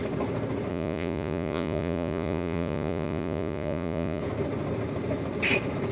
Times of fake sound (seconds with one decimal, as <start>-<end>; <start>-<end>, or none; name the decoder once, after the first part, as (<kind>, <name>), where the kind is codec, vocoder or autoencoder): 0.7-4.2 (vocoder, Vocos)